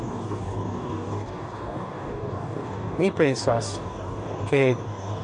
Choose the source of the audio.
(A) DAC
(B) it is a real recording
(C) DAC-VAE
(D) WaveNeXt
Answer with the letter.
A